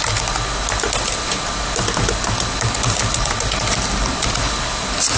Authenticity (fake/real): real